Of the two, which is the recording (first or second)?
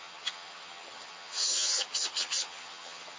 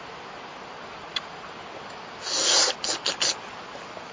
second